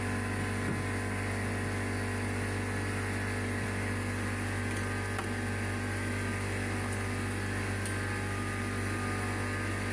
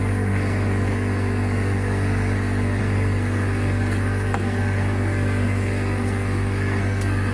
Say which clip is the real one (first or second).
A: first